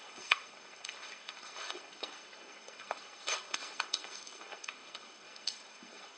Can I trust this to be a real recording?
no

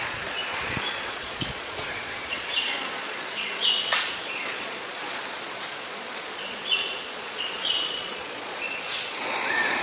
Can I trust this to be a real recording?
no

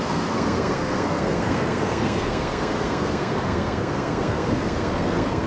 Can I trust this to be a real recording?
no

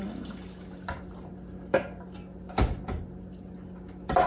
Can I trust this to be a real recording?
yes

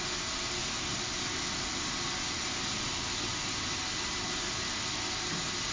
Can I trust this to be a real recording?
yes